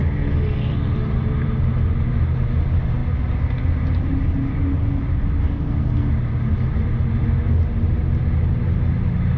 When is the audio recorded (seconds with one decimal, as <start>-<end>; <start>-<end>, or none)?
0.0-5.4; 6.1-9.4